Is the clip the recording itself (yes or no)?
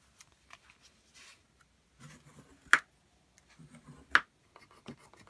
yes